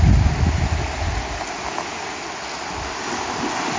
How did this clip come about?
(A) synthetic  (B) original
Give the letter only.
B